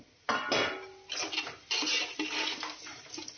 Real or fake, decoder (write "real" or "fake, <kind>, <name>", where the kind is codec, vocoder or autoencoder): real